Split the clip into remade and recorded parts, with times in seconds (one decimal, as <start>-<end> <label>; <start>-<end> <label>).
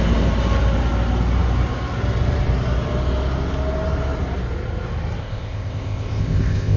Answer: 0.0-5.2 recorded; 5.2-6.8 remade